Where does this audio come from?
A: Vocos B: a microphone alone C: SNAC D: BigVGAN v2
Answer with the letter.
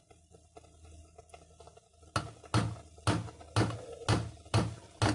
B